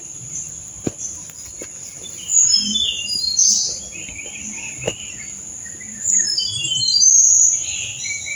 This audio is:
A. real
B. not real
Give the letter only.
B